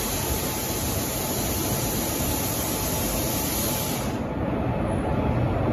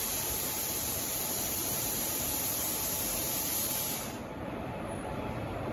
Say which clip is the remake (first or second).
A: second